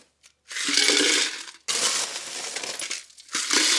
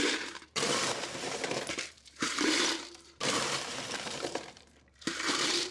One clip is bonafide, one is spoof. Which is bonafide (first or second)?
first